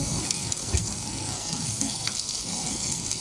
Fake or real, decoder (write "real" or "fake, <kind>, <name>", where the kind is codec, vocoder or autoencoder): fake, codec, SNAC